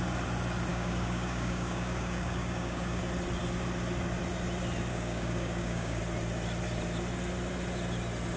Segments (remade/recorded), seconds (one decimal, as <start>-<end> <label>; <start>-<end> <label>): 0.0-0.7 recorded; 0.7-3.0 remade; 3.0-4.9 recorded; 4.9-6.0 remade; 6.0-8.4 recorded